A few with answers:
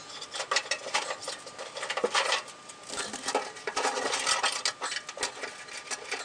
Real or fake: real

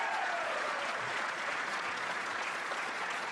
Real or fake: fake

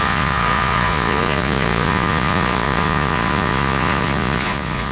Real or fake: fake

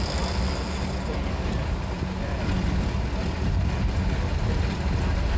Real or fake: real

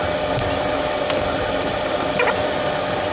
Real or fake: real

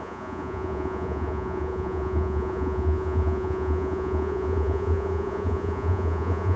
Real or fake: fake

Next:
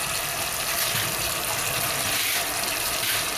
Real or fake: real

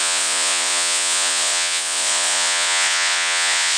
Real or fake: fake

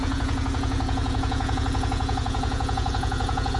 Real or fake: fake